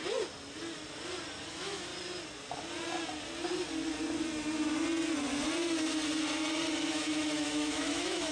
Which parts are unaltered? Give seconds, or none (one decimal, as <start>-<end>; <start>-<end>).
0.0-1.5; 1.9-6.9